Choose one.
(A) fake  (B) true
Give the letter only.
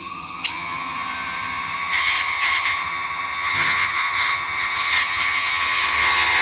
A